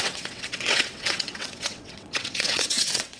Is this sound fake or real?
fake